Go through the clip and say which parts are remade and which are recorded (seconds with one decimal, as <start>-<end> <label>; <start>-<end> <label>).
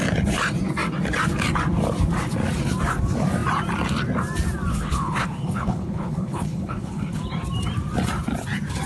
0.0-4.7 recorded; 4.7-7.2 remade; 7.2-8.9 recorded